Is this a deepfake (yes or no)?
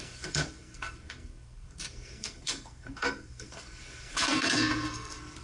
yes